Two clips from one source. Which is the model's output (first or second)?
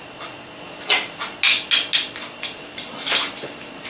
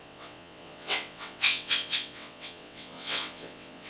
second